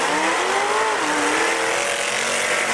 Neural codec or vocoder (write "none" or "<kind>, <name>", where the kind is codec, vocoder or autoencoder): none